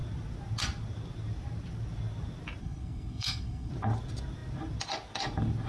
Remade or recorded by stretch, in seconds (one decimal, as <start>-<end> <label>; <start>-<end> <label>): 0.0-2.6 recorded; 2.6-3.7 remade; 3.7-5.7 recorded